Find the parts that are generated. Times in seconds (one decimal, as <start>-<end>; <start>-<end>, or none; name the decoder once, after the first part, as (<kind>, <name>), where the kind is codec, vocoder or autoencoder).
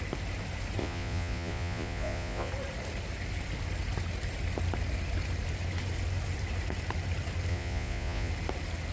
0.8-2.5 (vocoder, Vocos); 7.5-8.3